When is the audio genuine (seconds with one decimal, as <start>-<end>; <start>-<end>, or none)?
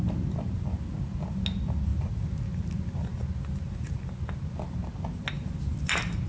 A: 0.0-6.3